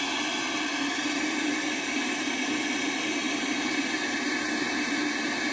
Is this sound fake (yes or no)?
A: no